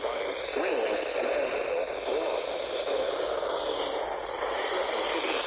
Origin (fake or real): real